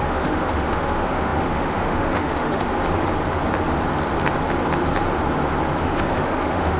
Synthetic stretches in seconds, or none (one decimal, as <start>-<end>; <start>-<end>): 0.0-2.7; 5.8-6.8

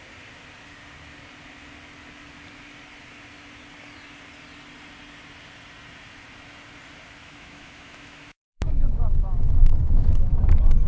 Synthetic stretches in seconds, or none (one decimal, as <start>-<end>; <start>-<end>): 7.2-10.5

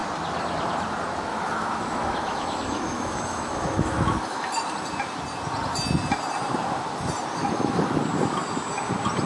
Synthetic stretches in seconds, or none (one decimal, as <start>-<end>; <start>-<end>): 1.3-4.5; 7.4-8.0